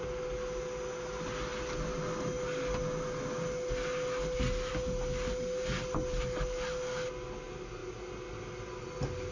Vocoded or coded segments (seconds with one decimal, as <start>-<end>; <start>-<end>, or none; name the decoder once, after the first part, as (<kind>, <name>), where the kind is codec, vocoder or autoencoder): none